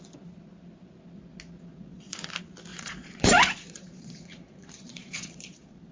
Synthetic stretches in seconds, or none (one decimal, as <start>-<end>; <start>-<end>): 1.7-2.3; 2.7-5.9